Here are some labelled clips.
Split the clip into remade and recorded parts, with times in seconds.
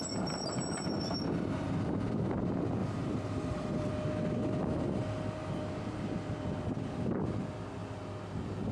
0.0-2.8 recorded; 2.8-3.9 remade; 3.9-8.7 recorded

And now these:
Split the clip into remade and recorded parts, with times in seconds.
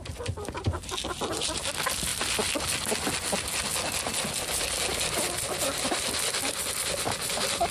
0.0-7.7 recorded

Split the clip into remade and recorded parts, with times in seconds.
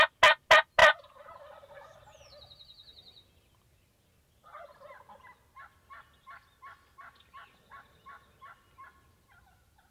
0.0-9.9 recorded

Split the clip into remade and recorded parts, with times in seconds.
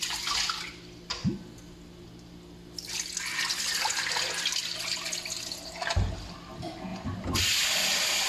0.0-8.3 recorded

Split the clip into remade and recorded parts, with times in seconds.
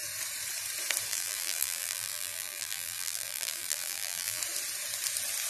0.0-1.1 recorded; 1.1-4.4 remade; 4.4-5.5 recorded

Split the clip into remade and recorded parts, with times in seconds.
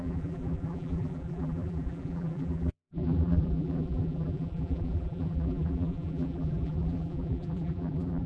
0.0-8.3 remade